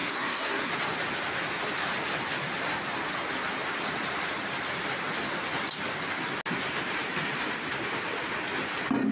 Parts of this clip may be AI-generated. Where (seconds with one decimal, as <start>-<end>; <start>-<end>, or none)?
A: 0.0-0.7